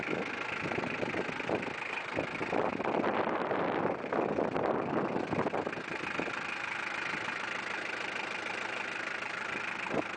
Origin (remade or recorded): remade